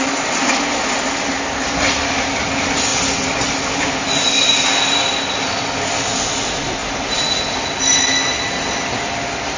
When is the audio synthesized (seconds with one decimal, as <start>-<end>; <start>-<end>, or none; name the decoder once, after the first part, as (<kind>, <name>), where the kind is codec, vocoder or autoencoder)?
none